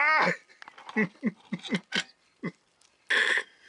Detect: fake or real real